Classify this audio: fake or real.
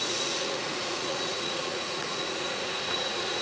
fake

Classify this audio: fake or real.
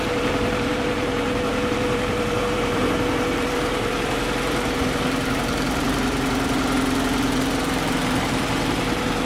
fake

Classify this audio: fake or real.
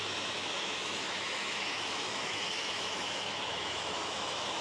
fake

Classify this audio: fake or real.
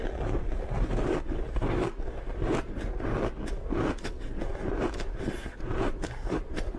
real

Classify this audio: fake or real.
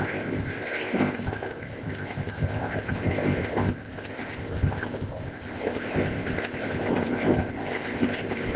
fake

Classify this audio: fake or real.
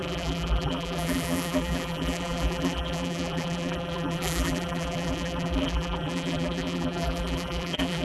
fake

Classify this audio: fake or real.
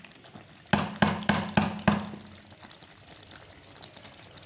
real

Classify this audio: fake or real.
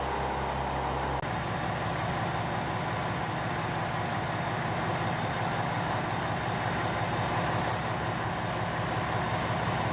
real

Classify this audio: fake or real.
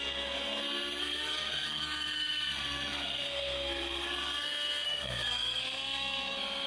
fake